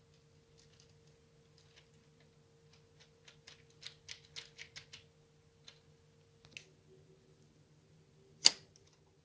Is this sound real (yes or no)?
yes